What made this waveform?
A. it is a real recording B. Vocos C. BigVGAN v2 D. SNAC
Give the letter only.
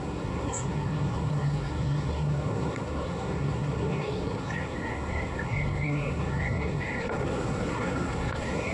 D